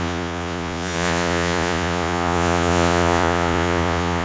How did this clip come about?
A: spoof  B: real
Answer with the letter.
A